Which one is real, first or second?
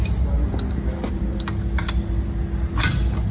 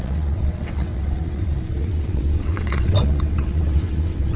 first